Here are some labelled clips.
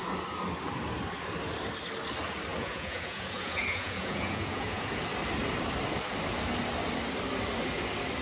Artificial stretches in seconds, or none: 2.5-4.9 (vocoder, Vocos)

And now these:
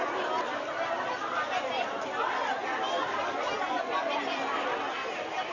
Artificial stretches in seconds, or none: none

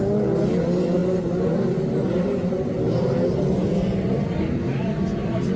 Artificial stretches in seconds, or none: none

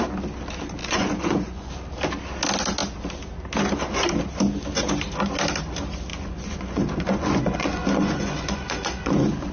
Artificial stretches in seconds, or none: 0.8-1.7 (vocoder, Vocos); 6.1-9.5